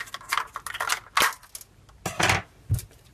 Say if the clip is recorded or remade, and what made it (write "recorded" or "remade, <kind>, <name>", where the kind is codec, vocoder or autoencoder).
recorded